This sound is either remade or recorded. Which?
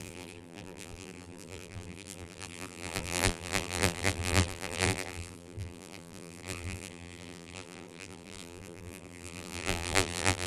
remade